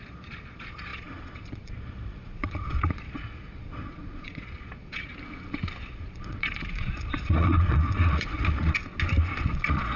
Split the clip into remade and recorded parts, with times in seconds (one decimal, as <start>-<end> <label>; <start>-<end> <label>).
0.0-5.1 remade; 5.1-5.9 recorded; 5.9-8.8 remade; 8.8-9.4 recorded; 9.4-10.0 remade